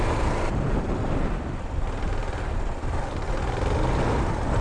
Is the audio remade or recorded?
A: recorded